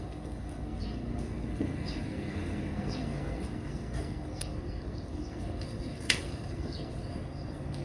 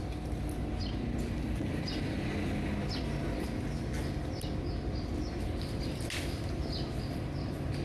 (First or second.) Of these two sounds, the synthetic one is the first